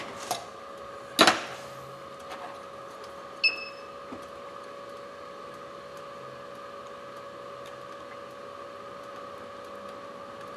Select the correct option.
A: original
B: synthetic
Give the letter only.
A